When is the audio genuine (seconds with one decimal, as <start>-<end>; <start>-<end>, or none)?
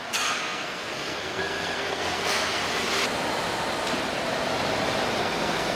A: 2.6-5.2